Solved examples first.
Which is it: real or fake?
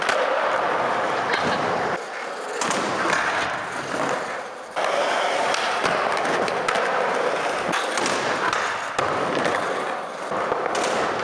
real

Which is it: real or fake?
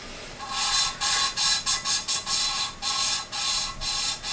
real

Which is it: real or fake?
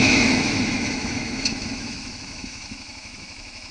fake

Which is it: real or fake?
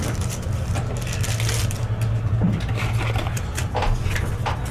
real